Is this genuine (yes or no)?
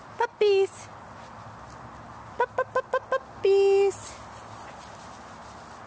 yes